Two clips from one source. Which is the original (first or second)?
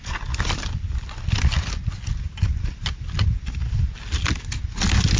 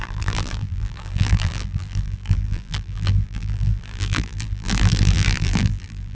first